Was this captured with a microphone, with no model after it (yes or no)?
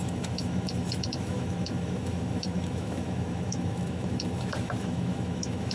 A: no